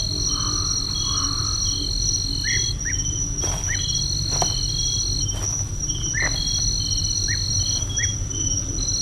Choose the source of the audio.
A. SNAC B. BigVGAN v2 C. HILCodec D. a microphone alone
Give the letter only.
D